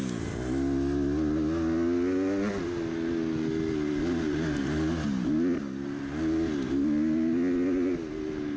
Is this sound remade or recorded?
recorded